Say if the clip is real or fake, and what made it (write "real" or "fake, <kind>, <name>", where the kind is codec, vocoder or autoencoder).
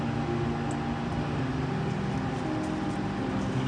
real